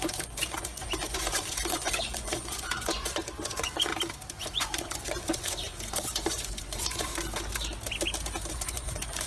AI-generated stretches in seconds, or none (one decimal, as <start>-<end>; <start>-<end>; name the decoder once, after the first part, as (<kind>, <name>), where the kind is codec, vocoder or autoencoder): 0.0-3.9 (vocoder, Vocos); 4.4-7.1; 8.5-9.3